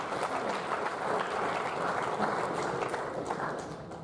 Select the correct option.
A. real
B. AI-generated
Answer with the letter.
A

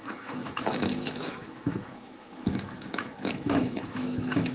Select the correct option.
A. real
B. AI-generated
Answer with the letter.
B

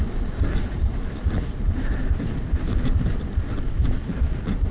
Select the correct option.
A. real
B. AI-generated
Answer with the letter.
A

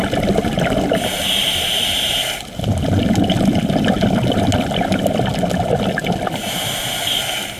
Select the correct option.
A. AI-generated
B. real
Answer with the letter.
B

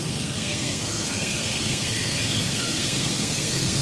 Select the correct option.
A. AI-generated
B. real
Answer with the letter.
A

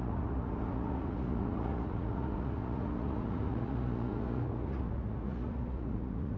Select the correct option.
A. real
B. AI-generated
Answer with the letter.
B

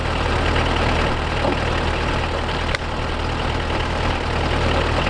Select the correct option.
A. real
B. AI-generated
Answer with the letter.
A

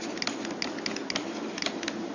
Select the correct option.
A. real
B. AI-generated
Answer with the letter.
A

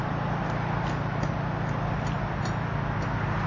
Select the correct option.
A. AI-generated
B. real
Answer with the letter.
B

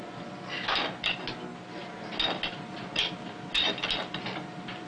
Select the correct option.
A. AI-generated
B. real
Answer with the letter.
B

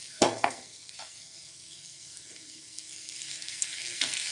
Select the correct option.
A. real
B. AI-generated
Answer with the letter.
B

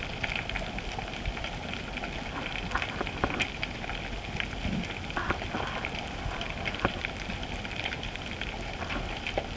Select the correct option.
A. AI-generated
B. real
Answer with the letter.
B